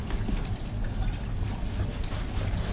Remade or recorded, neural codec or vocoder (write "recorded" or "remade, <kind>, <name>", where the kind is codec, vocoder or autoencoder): recorded